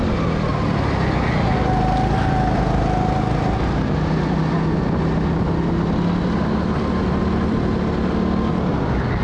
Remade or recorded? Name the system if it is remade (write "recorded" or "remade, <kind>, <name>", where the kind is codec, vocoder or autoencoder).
recorded